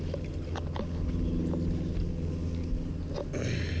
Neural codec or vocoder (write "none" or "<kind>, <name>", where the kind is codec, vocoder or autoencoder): none